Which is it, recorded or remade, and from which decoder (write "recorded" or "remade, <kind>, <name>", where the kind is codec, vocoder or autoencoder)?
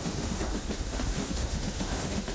remade, autoencoder, DAC-VAE